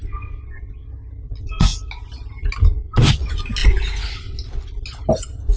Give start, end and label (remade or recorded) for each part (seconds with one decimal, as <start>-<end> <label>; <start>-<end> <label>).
0.0-5.6 recorded